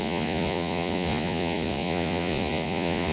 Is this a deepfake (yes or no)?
yes